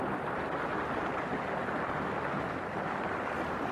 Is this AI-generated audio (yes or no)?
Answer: no